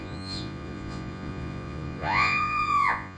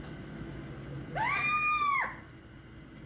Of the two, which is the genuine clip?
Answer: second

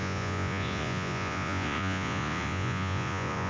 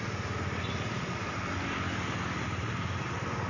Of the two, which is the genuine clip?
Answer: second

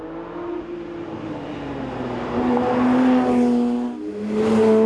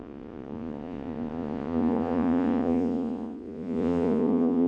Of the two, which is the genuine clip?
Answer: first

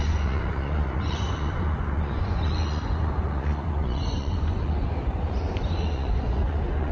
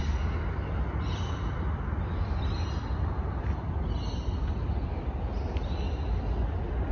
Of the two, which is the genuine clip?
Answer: second